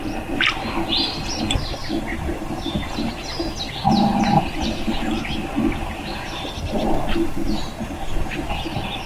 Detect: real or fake real